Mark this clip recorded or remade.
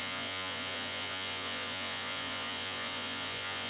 remade